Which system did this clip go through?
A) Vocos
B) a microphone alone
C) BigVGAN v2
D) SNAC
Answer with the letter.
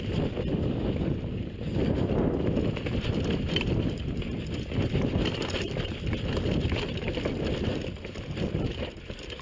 B